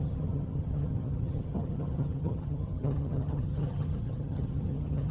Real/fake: fake